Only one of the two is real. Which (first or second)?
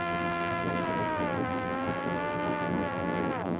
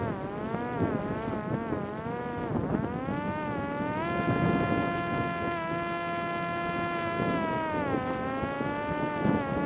second